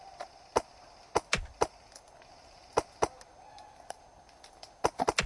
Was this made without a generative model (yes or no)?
yes